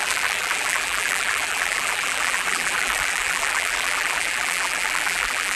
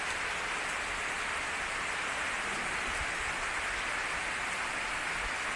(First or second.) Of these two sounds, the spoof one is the first